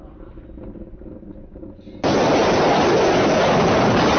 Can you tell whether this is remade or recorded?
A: recorded